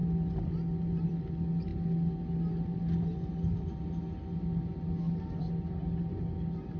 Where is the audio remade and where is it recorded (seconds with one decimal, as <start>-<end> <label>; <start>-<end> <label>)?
0.0-6.8 recorded